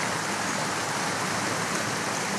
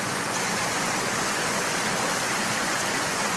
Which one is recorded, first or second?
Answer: first